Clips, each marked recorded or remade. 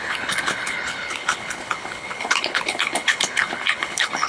remade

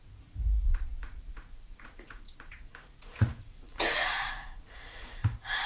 remade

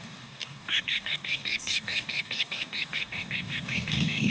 remade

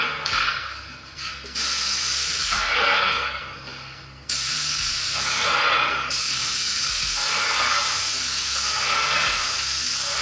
remade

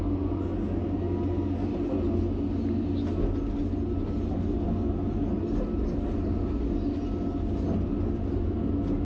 recorded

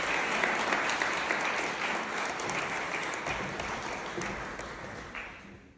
recorded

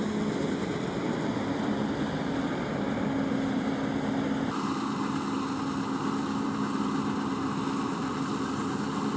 recorded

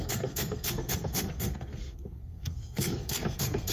remade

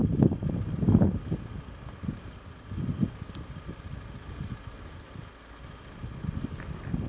recorded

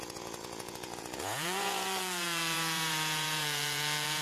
remade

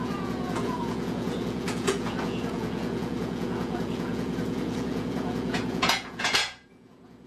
remade